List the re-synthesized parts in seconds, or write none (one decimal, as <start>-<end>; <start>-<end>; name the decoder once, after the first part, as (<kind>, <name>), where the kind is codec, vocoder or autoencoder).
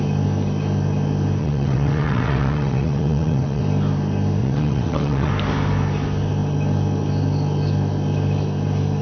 1.4-3.6 (vocoder, WaveNeXt); 4.4-5.3